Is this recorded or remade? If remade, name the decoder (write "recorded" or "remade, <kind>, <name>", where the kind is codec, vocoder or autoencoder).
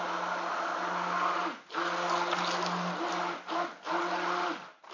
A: recorded